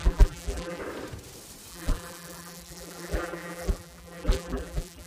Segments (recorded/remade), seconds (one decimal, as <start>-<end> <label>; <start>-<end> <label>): 0.0-0.8 remade; 0.8-1.7 recorded; 1.7-5.1 remade